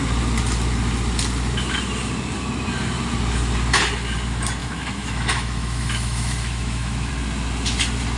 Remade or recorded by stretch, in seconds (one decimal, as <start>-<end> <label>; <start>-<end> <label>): 0.0-4.6 recorded; 4.6-7.1 remade; 7.1-8.2 recorded